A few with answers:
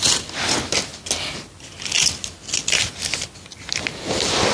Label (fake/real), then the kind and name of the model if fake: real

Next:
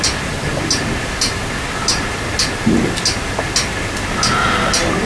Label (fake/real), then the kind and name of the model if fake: real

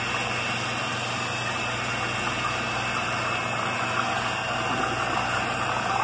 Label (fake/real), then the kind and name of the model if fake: real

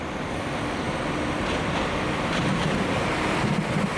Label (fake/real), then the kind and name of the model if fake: real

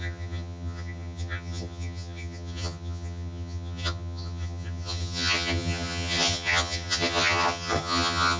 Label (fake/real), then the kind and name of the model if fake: fake, vocoder, HiFi-GAN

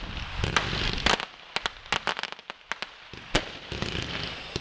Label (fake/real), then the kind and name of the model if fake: real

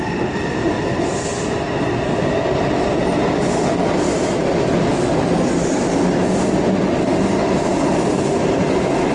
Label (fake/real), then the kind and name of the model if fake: real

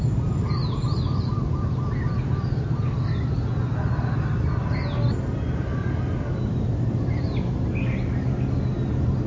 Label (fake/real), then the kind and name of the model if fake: real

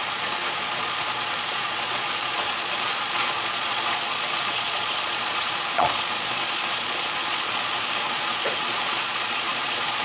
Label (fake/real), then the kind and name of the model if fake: fake, vocoder, Vocos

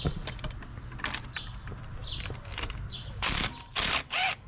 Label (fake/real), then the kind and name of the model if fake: real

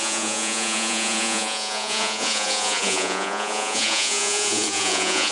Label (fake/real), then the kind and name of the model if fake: fake, vocoder, Vocos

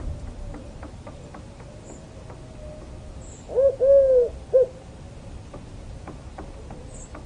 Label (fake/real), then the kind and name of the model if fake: real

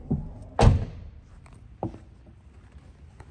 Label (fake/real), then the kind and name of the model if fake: real